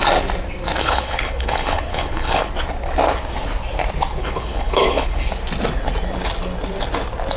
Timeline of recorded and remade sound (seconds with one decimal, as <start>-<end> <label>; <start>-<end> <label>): 0.0-0.8 recorded; 0.8-2.5 remade; 2.5-4.2 recorded; 4.2-5.3 remade; 5.3-7.4 recorded